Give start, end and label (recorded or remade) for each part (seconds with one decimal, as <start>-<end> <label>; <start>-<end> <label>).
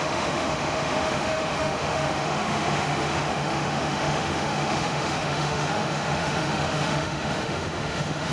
0.0-8.3 remade